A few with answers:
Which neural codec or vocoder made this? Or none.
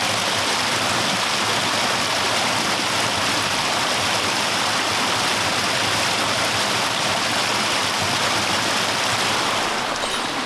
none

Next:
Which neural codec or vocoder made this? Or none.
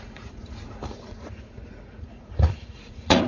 vocoder, Vocos